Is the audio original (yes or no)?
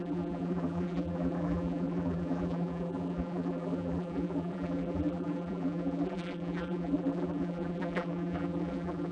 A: no